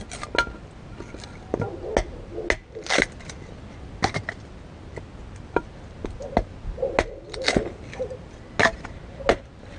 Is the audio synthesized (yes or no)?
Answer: no